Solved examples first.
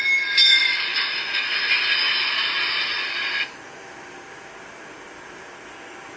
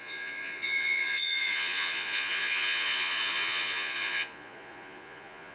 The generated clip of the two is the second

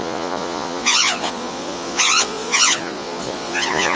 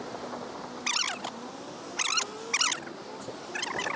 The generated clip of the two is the first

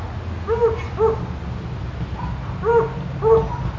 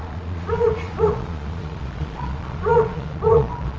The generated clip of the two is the second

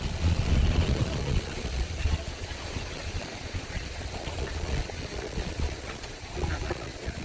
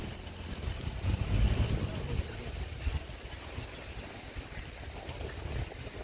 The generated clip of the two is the first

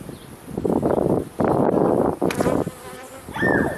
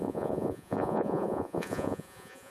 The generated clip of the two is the second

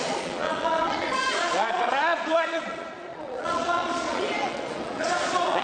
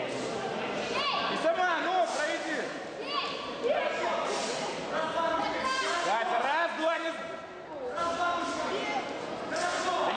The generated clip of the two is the first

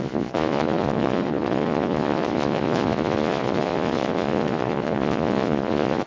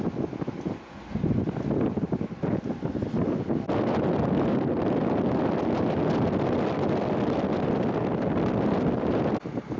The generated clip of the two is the first